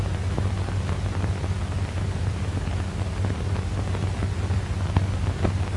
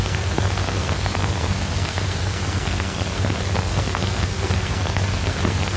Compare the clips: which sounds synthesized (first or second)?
second